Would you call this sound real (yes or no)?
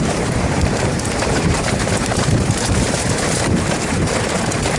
no